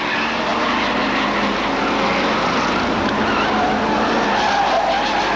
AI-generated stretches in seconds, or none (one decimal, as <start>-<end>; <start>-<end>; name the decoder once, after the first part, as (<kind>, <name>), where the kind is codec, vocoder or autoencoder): none